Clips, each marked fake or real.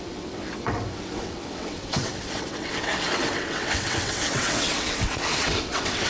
fake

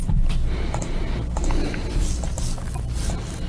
real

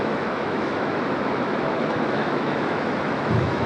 fake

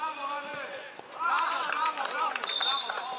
fake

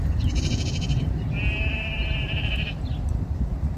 fake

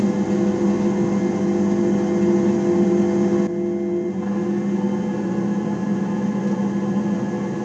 real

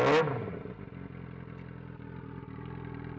real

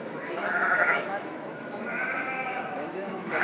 fake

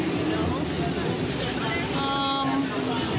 real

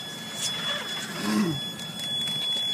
real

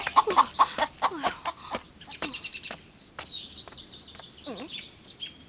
real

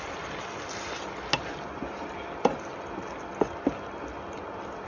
real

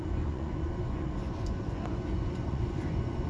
fake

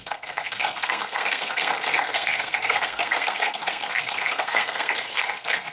fake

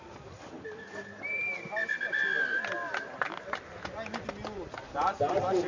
real